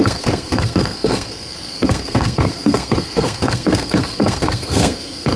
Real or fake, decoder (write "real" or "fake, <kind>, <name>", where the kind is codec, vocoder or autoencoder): fake, codec, SNAC